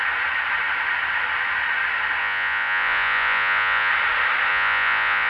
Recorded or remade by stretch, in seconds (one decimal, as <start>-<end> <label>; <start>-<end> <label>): 0.0-2.2 recorded; 2.2-3.9 remade; 3.9-4.5 recorded; 4.5-5.3 remade